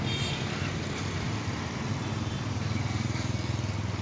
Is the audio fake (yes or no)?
no